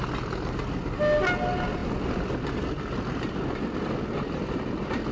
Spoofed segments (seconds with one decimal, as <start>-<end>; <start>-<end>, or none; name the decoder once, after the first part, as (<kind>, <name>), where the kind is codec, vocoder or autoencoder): none